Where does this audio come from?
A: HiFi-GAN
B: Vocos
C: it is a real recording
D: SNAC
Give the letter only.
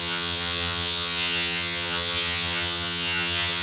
A